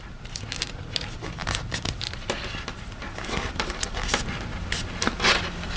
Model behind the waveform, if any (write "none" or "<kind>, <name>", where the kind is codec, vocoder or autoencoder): none